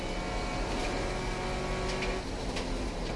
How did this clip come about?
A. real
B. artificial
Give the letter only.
A